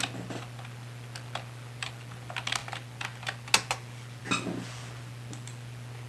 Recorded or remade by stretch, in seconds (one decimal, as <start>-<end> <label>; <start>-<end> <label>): 0.0-6.1 recorded